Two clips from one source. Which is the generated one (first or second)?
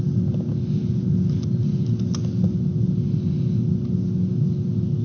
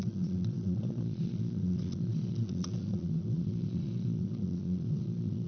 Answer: second